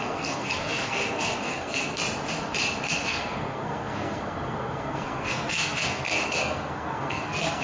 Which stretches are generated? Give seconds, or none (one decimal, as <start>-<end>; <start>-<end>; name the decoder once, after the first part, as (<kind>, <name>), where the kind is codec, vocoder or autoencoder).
0.0-2.0 (codec, SNAC); 2.9-7.6